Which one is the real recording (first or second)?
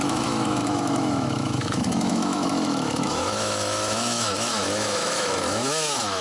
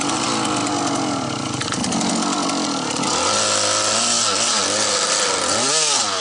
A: second